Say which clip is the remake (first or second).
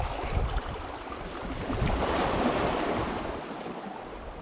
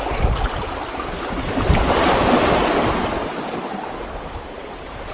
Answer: first